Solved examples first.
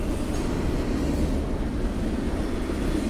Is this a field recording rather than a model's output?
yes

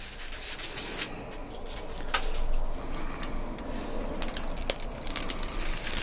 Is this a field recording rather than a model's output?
yes